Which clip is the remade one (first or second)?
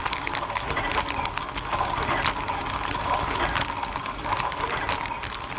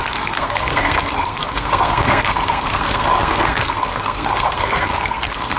second